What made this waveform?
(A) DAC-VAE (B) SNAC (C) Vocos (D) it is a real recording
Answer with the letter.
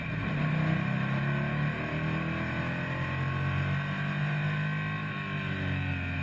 D